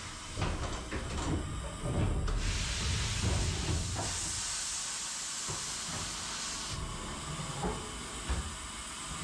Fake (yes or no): no